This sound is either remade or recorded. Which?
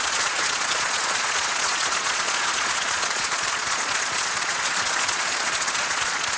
remade